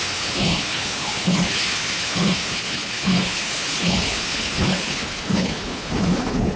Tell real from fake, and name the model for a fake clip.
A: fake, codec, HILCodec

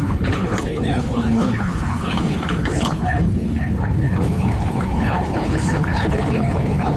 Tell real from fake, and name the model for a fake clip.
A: fake, codec, HILCodec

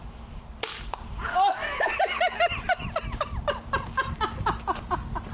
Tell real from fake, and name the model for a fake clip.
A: real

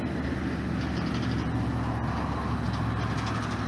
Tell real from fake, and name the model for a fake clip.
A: real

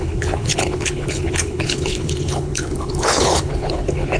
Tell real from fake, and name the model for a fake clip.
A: fake, codec, HILCodec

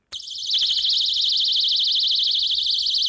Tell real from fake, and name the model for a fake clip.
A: real